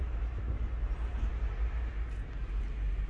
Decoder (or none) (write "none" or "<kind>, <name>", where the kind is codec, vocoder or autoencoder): none